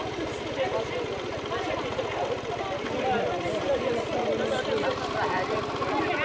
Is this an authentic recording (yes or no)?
yes